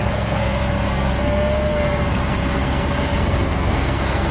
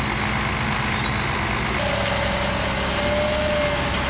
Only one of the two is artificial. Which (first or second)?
first